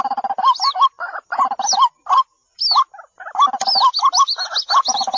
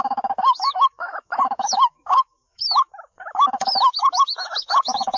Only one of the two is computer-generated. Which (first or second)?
second